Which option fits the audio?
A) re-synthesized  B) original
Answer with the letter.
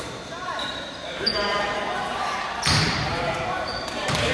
A